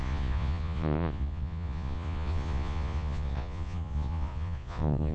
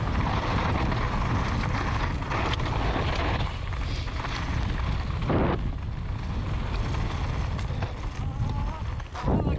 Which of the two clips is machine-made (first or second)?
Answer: first